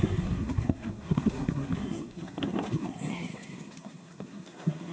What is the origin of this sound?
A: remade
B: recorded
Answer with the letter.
A